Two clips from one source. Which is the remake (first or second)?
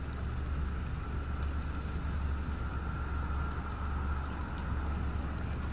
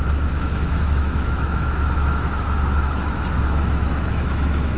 second